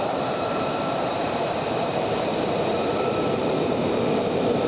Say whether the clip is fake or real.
fake